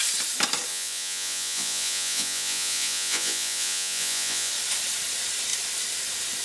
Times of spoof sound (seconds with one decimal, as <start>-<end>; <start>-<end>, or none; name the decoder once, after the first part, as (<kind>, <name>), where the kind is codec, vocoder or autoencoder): 0.7-4.5 (vocoder, Vocos)